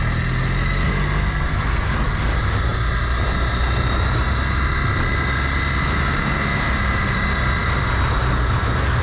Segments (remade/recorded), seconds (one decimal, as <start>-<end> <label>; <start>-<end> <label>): 0.0-0.6 recorded; 0.6-1.9 remade; 1.9-9.0 recorded